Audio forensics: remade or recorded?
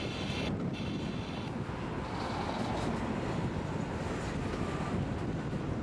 recorded